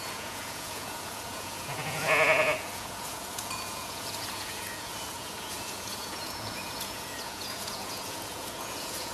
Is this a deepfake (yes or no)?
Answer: yes